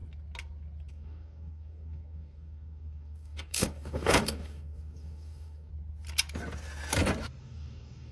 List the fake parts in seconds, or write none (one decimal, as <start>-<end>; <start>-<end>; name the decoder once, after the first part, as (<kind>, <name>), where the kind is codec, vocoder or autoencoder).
0.9-5.7 (codec, DAC); 7.4-8.1